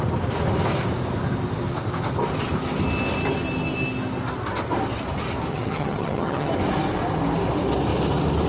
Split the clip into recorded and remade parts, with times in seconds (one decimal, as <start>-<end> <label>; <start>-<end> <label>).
0.0-5.5 recorded; 5.5-6.5 remade; 6.5-8.5 recorded